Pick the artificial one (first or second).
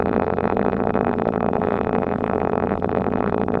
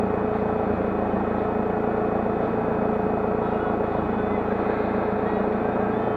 first